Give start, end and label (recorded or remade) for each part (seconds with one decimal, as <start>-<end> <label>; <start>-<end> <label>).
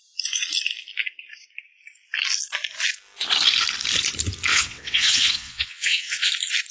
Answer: 0.0-4.5 recorded; 4.5-6.3 remade; 6.3-6.7 recorded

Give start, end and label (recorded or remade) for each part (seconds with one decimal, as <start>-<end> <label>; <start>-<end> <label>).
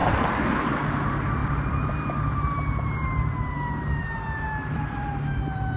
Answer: 0.0-0.5 recorded; 0.5-5.8 remade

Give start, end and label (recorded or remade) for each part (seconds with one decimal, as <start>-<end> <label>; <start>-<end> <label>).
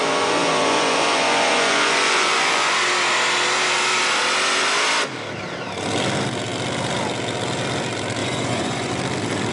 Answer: 0.0-2.7 remade; 2.7-8.2 recorded; 8.2-8.9 remade; 8.9-9.5 recorded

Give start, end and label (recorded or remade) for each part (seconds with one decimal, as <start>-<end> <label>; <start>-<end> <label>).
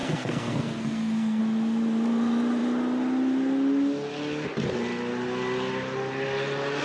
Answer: 0.0-1.4 remade; 1.4-6.8 recorded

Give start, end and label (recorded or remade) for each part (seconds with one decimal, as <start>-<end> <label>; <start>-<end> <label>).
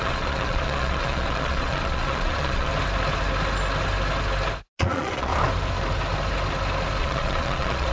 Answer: 0.0-2.7 remade; 2.7-4.8 recorded; 4.8-5.3 remade; 5.3-7.0 recorded; 7.0-7.9 remade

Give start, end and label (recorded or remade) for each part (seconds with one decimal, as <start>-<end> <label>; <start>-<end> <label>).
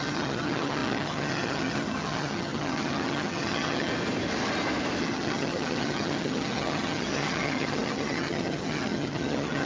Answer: 0.0-3.9 remade; 3.9-5.0 recorded; 5.0-9.7 remade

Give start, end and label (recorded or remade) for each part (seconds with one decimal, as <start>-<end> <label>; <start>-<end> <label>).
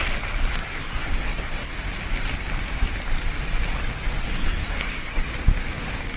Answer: 0.0-0.6 recorded; 0.6-1.7 remade; 1.7-4.2 recorded; 4.2-5.3 remade; 5.3-6.2 recorded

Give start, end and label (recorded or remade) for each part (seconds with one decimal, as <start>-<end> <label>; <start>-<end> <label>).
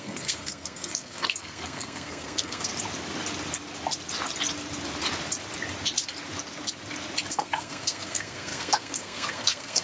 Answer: 0.0-2.7 remade; 2.7-7.3 recorded; 7.3-9.8 remade